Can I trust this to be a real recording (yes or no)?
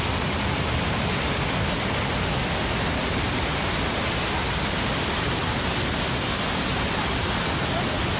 yes